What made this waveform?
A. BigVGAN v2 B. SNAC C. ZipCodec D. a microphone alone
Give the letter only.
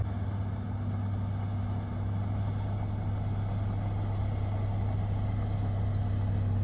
D